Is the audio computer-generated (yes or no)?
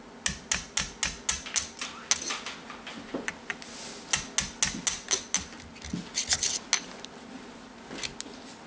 no